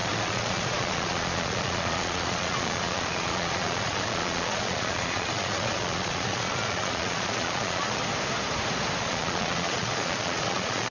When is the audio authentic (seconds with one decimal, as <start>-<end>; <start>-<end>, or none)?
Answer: 8.0-9.0